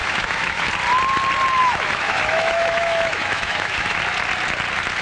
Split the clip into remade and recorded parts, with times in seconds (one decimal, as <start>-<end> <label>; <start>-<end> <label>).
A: 0.0-0.7 remade; 0.7-1.6 recorded; 1.6-4.0 remade; 4.0-5.0 recorded